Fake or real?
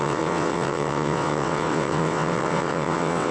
fake